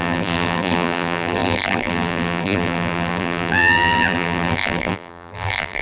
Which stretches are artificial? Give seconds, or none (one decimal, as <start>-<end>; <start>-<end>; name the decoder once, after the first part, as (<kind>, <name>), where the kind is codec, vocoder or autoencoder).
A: 0.0-5.8 (vocoder, BigVGAN v2)

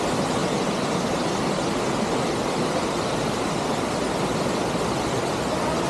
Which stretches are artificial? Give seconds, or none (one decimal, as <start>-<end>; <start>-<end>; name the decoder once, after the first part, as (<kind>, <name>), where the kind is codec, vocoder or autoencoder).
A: 0.4-1.5 (vocoder, BigVGAN v2)

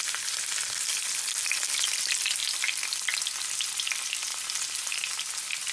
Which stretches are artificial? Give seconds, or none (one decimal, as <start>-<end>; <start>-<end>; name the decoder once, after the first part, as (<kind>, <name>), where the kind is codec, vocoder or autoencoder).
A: 4.3-5.1 (vocoder, BigVGAN v2)

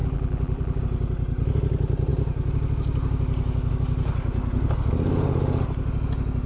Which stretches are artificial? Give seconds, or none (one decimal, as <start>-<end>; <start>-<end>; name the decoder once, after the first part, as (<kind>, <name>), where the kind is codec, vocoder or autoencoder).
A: 0.0-0.8 (vocoder, BigVGAN v2)

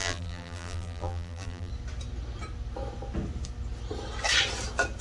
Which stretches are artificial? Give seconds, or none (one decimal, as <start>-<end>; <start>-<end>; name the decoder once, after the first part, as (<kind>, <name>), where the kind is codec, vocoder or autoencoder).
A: 0.0-1.7 (vocoder, BigVGAN v2)

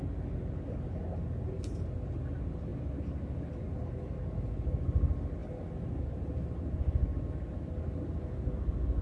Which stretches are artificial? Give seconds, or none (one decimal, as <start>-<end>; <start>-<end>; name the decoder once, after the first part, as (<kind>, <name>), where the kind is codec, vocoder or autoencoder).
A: none

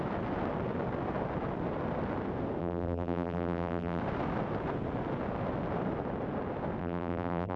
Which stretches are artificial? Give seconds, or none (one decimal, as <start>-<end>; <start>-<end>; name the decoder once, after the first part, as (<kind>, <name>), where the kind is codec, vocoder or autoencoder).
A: 2.6-4.0 (vocoder, BigVGAN v2); 6.8-7.6

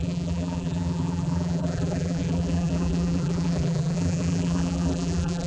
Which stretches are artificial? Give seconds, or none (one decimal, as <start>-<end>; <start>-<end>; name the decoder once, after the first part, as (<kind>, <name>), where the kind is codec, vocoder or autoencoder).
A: 0.0-5.5 (vocoder, BigVGAN v2)